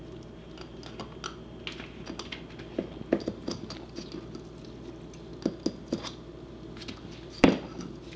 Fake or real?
real